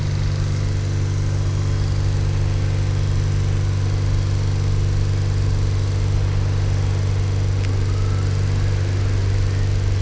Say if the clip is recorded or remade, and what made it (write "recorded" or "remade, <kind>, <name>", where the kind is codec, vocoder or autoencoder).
recorded